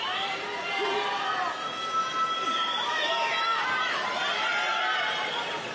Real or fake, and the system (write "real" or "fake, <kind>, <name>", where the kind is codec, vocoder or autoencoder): real